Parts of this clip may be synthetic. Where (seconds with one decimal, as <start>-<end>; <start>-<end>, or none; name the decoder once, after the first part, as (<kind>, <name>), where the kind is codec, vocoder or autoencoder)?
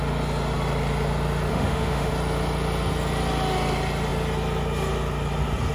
1.5-2.1 (autoencoder, DAC-VAE)